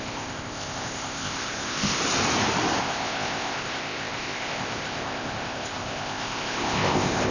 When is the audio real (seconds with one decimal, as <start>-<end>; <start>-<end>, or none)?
2.0-2.8